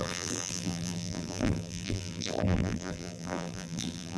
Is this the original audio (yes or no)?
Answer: no